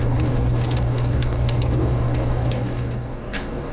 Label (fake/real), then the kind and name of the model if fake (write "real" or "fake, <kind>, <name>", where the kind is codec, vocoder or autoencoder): fake, codec, DAC